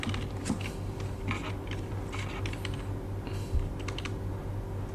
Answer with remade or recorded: recorded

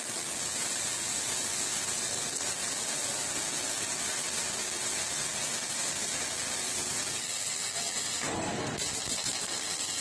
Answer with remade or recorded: recorded